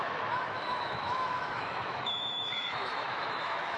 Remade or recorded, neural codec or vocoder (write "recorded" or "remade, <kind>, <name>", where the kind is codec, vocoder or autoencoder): remade, autoencoder, DAC-VAE